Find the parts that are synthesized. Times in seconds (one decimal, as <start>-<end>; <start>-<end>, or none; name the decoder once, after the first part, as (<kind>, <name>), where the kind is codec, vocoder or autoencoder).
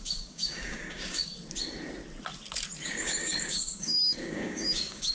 0.0-1.3 (codec, DAC); 2.8-5.1